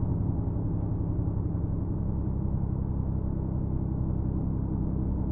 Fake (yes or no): no